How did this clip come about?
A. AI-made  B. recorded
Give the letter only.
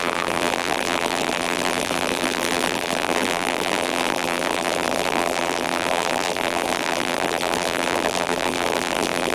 A